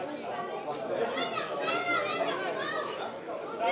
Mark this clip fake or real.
real